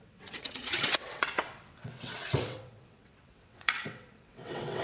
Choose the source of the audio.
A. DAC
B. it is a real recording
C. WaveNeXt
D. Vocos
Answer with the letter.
C